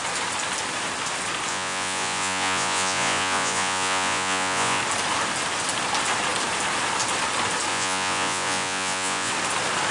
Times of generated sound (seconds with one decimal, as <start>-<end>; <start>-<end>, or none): 1.5-4.8; 7.7-9.3